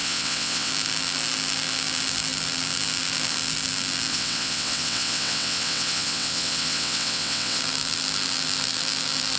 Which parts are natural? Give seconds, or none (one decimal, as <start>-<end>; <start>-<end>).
0.7-4.1; 7.6-9.4